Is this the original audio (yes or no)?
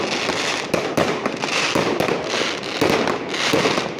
yes